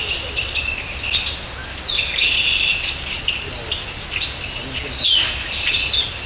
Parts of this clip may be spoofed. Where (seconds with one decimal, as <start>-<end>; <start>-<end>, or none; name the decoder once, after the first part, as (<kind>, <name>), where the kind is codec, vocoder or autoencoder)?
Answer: none